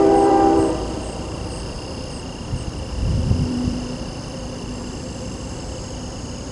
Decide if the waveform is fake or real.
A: fake